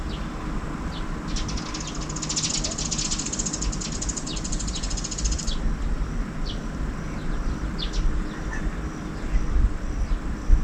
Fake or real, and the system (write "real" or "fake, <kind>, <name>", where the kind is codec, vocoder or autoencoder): real